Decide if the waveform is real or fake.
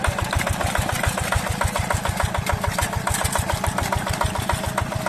fake